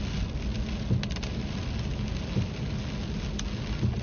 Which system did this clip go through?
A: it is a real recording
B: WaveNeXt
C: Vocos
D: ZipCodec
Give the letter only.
A